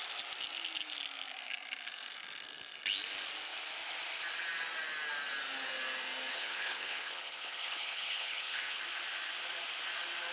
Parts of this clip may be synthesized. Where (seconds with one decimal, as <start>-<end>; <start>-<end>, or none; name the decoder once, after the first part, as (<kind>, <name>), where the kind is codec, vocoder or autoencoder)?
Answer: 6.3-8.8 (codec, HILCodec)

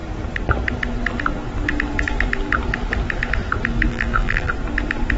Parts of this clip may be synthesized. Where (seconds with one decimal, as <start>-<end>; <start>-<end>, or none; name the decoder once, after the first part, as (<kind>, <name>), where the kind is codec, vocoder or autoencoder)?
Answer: 3.9-4.5 (vocoder, BigVGAN v2)

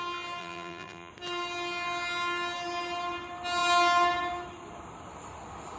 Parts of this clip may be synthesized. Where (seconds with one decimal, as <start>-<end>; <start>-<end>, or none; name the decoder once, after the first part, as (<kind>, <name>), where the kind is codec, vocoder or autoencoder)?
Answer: 0.4-1.1 (vocoder, BigVGAN v2)

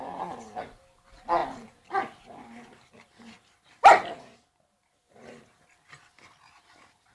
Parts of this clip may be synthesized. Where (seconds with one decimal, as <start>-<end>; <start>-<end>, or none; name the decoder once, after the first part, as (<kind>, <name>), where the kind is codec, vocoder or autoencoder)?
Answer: none